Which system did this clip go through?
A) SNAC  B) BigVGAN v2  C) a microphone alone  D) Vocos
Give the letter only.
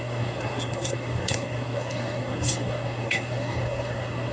A